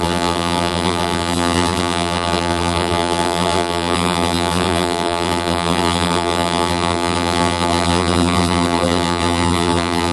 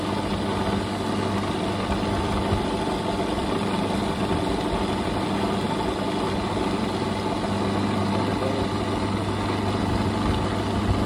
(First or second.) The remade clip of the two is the first